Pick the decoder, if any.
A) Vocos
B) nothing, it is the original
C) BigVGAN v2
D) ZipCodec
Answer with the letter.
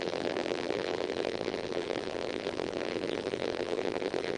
C